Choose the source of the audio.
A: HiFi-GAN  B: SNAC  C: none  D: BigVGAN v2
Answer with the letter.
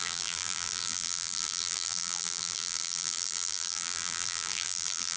D